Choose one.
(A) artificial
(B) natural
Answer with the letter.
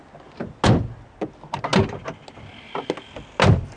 B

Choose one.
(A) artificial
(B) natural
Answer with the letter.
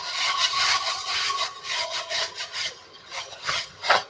A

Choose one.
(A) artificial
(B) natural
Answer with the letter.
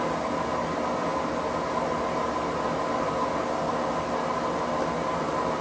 B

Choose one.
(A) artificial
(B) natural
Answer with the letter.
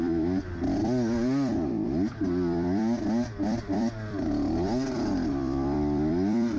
A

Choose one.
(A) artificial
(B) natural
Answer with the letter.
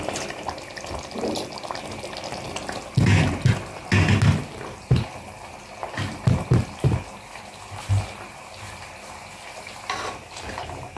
B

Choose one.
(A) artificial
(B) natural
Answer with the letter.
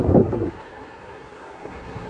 A